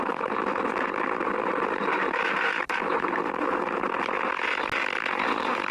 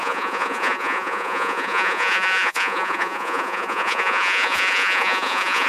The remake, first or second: second